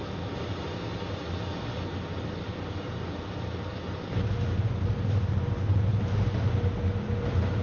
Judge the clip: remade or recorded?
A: recorded